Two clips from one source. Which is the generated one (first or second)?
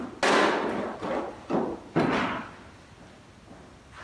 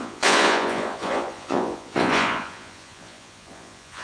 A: second